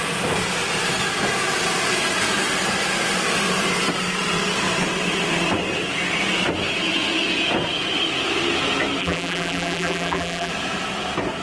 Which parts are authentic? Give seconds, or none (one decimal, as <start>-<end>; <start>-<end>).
0.0-9.0; 10.5-11.4